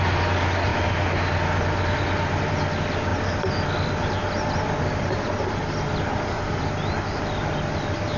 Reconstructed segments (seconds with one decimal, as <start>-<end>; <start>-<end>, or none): none